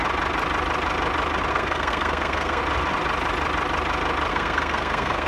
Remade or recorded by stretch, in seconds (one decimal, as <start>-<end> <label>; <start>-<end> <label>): 0.0-1.5 recorded; 1.5-2.6 remade; 2.6-4.3 recorded; 4.3-5.3 remade